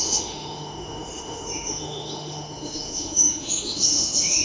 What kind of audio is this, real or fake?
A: fake